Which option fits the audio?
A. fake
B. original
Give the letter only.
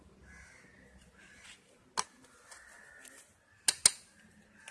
B